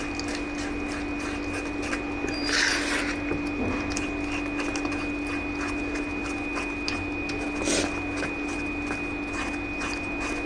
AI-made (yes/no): no